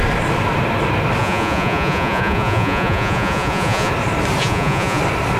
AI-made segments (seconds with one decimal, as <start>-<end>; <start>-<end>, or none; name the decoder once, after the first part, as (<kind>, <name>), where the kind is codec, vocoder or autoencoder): 1.2-3.9 (vocoder, Vocos); 4.4-5.0